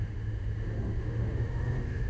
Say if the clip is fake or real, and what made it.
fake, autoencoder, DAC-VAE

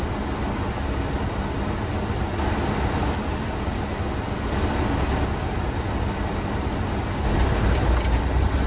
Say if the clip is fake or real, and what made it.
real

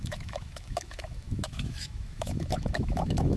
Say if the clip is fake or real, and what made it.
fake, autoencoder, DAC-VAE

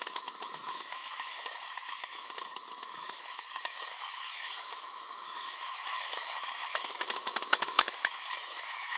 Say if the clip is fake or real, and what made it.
fake, autoencoder, DAC-VAE